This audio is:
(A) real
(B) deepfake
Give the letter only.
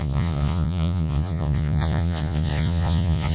B